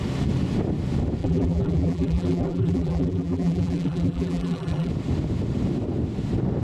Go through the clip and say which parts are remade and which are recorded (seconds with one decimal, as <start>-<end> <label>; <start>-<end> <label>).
0.0-1.2 recorded; 1.2-4.9 remade; 4.9-6.6 recorded